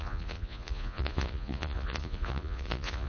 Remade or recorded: remade